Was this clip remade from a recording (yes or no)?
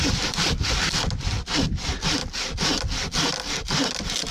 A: no